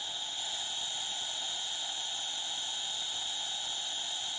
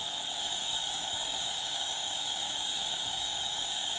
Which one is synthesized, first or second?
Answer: second